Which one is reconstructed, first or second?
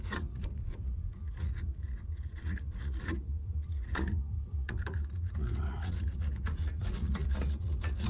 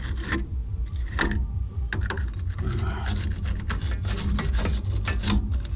first